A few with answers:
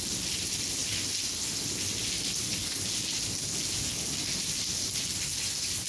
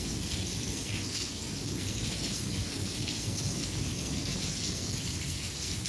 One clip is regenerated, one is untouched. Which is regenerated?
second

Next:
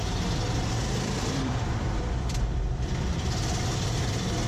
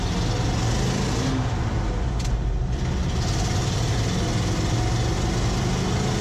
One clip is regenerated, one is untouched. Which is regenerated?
first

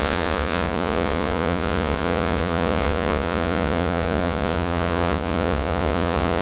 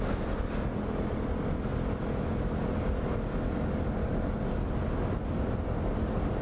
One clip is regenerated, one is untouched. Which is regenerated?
first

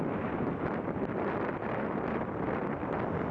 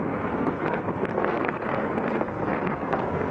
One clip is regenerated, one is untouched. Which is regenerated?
second